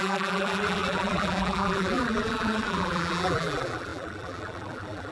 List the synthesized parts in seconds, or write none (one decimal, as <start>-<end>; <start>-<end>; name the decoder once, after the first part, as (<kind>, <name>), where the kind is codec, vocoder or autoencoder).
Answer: 0.0-5.1 (vocoder, BigVGAN v2)

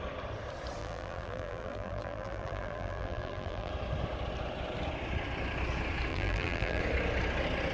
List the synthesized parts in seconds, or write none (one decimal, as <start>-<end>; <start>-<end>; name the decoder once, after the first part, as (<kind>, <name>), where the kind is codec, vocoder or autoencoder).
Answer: 0.8-3.7 (vocoder, BigVGAN v2); 6.1-6.8

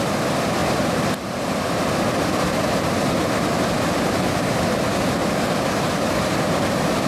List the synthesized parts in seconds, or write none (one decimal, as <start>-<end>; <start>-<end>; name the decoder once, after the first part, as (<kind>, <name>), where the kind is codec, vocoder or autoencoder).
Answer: 0.6-3.9 (vocoder, BigVGAN v2)

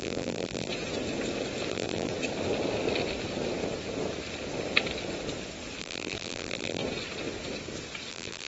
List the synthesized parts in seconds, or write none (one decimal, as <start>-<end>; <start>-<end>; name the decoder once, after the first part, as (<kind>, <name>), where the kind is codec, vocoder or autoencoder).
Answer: 0.0-0.7 (vocoder, BigVGAN v2); 1.7-2.1; 5.8-6.8; 8.1-8.5

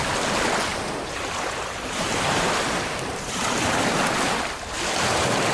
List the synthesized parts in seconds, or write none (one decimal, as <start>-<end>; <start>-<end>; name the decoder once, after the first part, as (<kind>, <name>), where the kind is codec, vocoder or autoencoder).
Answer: 0.7-4.0 (vocoder, BigVGAN v2)

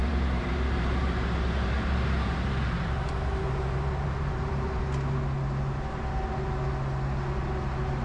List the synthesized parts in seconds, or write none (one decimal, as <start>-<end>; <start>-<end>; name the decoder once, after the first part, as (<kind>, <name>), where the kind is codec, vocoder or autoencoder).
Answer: 0.0-4.8 (vocoder, BigVGAN v2)

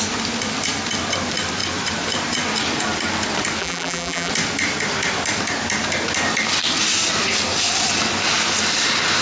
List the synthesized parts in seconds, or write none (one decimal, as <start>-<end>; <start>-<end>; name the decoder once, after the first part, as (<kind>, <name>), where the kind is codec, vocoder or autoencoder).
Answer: 3.6-4.3 (vocoder, BigVGAN v2)

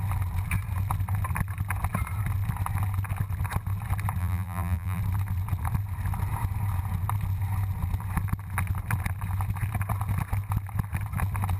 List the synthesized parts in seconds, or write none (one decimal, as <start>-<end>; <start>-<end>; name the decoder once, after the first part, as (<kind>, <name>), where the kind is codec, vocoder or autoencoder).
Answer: 4.2-5.0 (vocoder, BigVGAN v2)